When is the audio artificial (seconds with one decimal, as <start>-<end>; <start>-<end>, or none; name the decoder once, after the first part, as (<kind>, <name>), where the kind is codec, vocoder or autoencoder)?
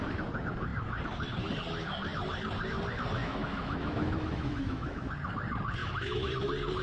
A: 3.2-5.1 (autoencoder, DAC-VAE); 5.8-6.3